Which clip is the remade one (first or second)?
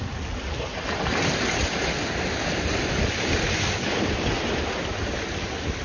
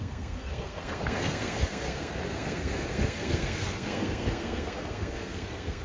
second